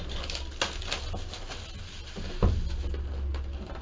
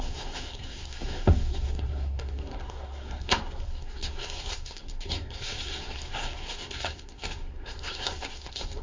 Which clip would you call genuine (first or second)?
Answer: first